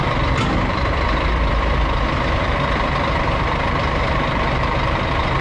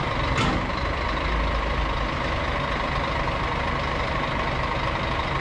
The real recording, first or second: second